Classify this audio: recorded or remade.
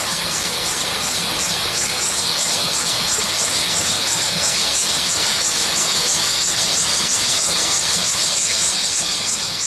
remade